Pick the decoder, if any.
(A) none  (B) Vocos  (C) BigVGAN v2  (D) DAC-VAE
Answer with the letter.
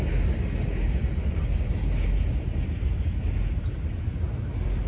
A